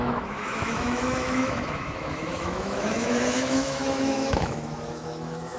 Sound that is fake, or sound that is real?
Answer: fake